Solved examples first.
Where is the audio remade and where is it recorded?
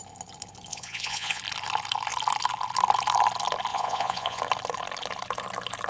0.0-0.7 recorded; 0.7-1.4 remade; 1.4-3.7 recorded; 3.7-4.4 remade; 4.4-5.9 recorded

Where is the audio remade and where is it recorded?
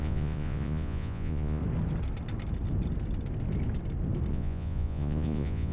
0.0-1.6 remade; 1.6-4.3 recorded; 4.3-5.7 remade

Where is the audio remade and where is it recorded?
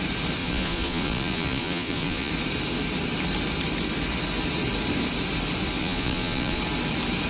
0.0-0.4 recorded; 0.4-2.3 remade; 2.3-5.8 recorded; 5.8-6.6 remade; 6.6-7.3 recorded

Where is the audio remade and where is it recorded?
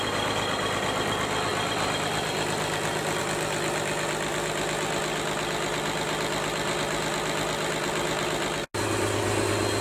0.0-9.8 recorded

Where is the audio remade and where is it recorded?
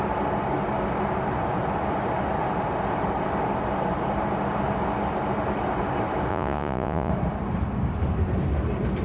0.0-6.3 recorded; 6.3-7.1 remade; 7.1-9.0 recorded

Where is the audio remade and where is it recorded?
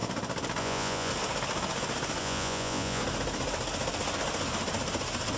0.0-0.6 recorded; 0.6-1.1 remade; 1.1-2.2 recorded; 2.2-3.0 remade; 3.0-5.4 recorded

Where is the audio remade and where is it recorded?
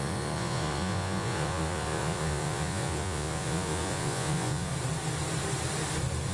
0.0-4.7 remade; 4.7-6.3 recorded